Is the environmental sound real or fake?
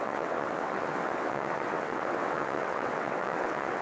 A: fake